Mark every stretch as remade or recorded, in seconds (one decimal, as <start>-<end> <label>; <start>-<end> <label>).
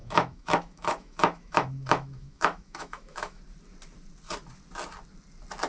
0.0-3.4 remade; 3.4-5.7 recorded